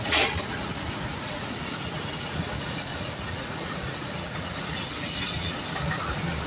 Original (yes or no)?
no